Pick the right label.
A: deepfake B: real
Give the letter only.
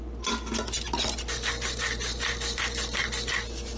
B